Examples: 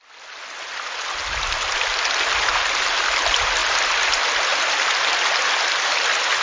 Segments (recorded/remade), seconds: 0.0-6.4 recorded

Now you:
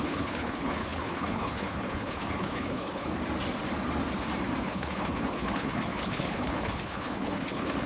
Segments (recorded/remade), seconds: 0.0-3.1 remade; 3.1-4.6 recorded; 4.6-7.9 remade

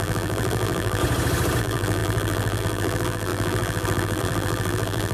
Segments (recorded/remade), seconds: 0.0-1.0 remade; 1.0-1.6 recorded; 1.6-5.1 remade

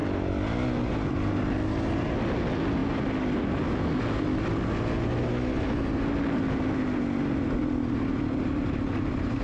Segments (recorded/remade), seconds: 0.0-9.4 recorded

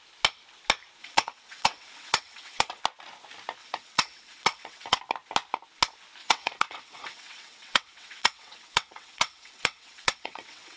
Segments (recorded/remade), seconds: 0.0-1.0 recorded; 1.0-2.8 remade; 2.8-3.6 recorded; 3.6-5.0 remade; 5.0-6.2 recorded; 6.2-10.8 remade

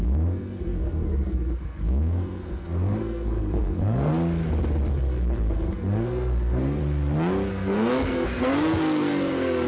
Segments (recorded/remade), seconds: 0.0-4.1 remade; 4.1-4.9 recorded; 4.9-6.8 remade; 6.8-7.5 recorded; 7.5-9.7 remade

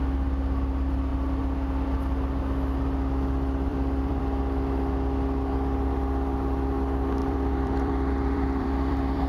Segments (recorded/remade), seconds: 0.0-3.7 recorded; 3.7-4.2 remade; 4.2-7.2 recorded; 7.2-9.3 remade